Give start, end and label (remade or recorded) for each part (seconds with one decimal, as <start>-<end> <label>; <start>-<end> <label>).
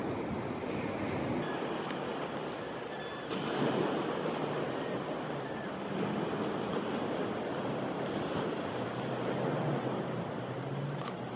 0.0-11.4 recorded